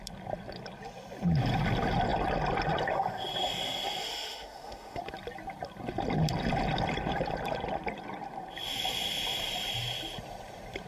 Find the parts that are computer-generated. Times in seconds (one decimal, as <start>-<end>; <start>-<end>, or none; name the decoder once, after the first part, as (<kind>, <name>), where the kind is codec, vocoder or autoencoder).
4.0-5.0 (autoencoder, DAC-VAE)